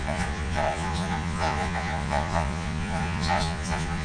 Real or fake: fake